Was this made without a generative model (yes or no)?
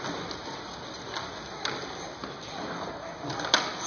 yes